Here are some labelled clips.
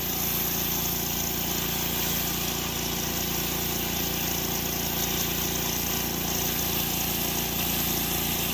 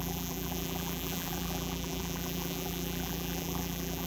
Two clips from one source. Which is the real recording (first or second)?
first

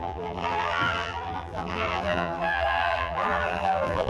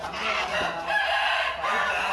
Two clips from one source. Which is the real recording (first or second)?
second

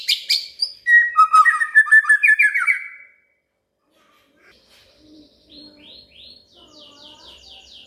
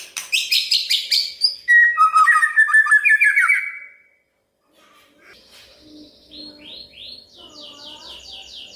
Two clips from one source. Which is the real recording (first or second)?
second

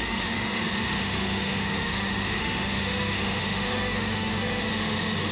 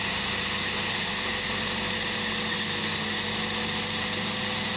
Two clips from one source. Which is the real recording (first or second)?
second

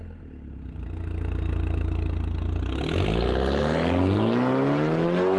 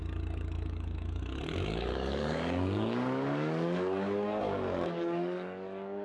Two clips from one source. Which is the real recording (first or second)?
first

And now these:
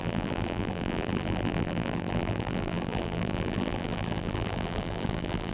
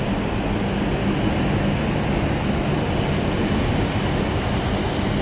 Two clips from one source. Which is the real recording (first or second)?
second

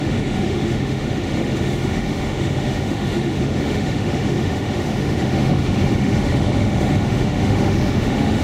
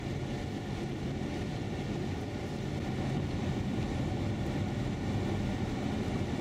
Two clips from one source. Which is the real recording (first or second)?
second